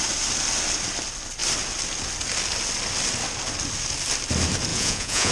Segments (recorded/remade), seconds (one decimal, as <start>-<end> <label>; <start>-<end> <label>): 0.0-4.7 recorded; 4.7-5.3 remade